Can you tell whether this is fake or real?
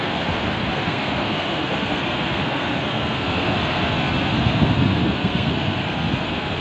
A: fake